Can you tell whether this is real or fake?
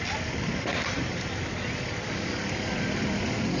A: real